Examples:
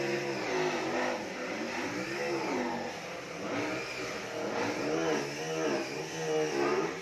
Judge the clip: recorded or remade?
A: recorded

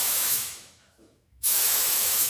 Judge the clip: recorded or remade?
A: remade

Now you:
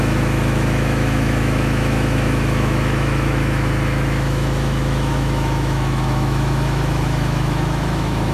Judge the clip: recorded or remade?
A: remade